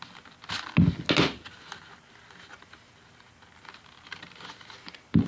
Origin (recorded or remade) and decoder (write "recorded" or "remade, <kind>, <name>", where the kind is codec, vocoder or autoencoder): recorded